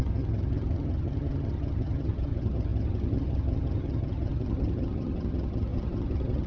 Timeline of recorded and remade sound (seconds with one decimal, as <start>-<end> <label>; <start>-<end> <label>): 0.0-6.5 remade